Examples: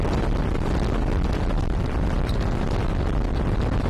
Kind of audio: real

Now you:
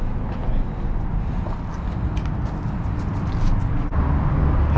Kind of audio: real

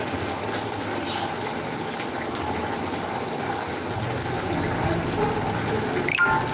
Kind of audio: real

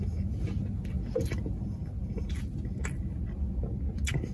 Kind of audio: real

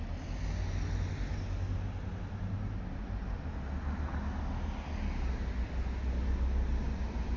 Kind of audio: real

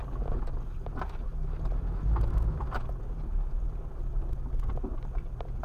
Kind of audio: real